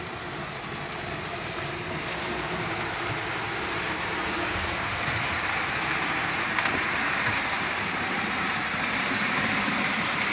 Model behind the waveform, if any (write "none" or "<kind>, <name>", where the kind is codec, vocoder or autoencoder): vocoder, BigVGAN v2